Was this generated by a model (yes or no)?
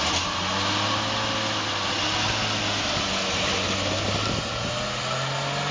no